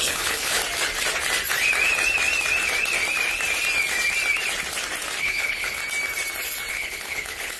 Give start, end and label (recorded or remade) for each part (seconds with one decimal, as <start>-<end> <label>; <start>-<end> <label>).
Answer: 0.0-0.6 remade; 0.6-5.2 recorded; 5.2-5.8 remade; 5.8-6.7 recorded; 6.7-7.6 remade